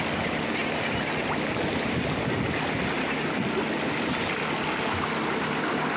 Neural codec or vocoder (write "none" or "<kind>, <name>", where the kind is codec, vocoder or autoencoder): none